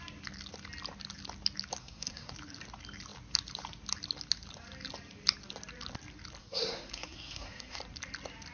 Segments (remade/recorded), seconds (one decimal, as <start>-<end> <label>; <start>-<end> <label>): 0.0-1.8 recorded; 1.8-2.3 remade; 2.3-6.4 recorded; 6.4-7.8 remade; 7.8-8.5 recorded